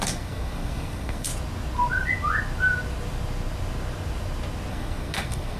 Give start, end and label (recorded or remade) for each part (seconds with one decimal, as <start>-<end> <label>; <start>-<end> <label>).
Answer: 0.0-1.3 remade; 1.3-4.7 recorded; 4.7-5.6 remade